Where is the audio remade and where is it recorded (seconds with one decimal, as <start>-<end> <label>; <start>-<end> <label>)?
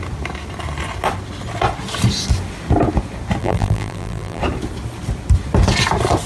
0.0-3.4 recorded; 3.4-4.4 remade; 4.4-6.3 recorded